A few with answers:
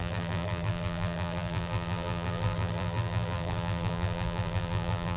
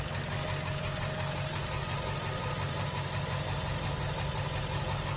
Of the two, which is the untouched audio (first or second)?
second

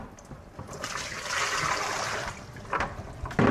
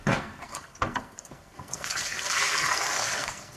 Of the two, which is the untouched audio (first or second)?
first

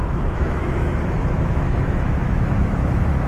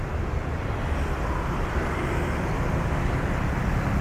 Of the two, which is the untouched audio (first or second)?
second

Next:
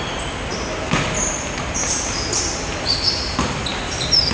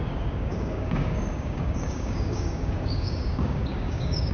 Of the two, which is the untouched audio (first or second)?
first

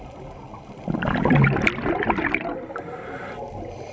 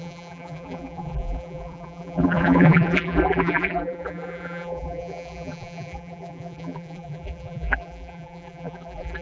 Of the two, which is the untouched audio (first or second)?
first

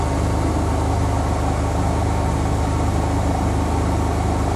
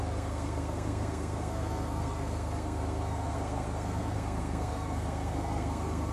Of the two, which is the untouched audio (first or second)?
first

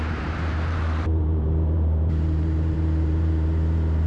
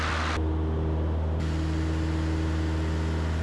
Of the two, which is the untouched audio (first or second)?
second